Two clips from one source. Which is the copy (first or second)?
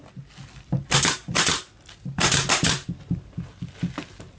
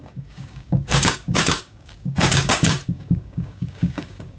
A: second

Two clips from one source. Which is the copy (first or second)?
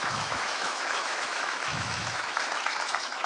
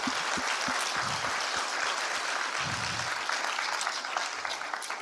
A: first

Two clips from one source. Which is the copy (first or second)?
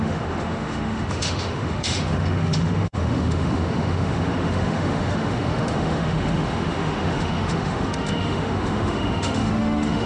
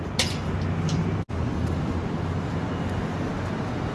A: first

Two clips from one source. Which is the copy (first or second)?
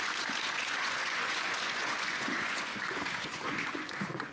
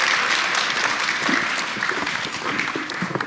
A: first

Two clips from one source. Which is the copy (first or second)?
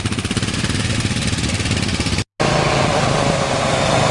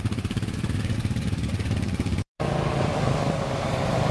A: second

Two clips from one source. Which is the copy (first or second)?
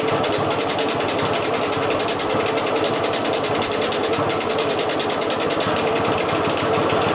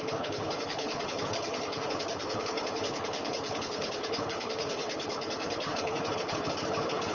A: second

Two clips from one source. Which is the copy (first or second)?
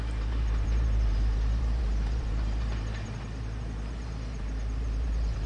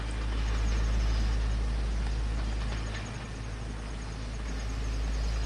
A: first